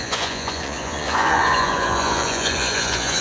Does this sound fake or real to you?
fake